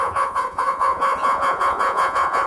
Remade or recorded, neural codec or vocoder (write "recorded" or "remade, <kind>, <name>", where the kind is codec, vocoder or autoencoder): remade, vocoder, Vocos